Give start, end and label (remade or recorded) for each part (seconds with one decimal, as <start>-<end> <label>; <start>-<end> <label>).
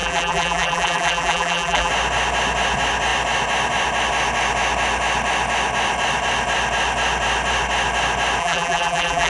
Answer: 0.0-1.9 remade; 1.9-8.4 recorded; 8.4-9.3 remade